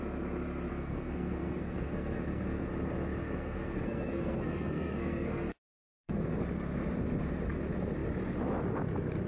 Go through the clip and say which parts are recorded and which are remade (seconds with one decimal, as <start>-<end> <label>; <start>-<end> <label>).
0.0-0.7 recorded; 0.7-2.7 remade; 2.7-3.2 recorded; 3.2-6.4 remade; 6.4-9.3 recorded